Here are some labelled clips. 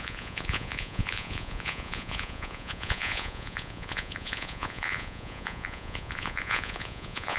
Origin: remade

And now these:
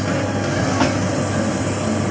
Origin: recorded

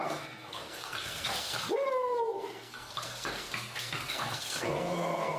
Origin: remade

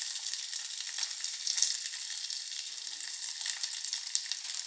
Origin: recorded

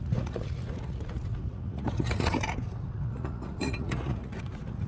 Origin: remade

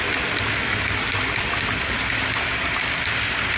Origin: recorded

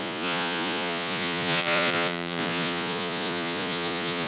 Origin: remade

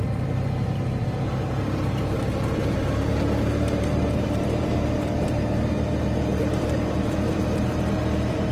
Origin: remade